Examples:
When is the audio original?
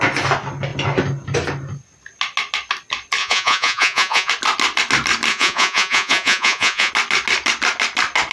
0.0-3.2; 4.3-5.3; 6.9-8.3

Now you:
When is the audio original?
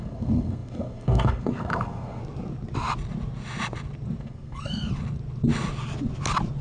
2.2-4.2; 4.9-6.6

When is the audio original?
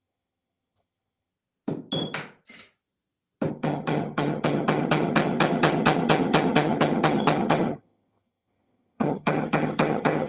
1.3-3.5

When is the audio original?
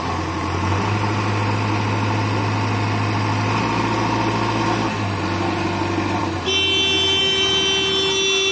0.0-8.5